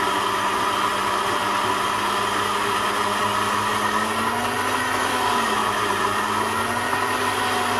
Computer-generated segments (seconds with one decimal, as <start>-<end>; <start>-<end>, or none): 5.6-6.2